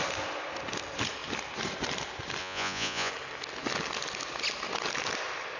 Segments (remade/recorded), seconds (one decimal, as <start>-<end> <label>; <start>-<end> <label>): 0.0-2.4 recorded; 2.4-3.1 remade; 3.1-5.6 recorded